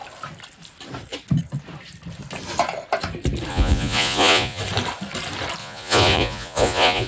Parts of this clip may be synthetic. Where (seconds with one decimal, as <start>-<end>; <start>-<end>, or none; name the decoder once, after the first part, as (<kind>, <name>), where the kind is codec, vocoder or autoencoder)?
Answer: 3.5-4.6 (vocoder, Vocos); 5.6-7.1